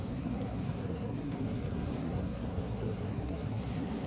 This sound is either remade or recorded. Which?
remade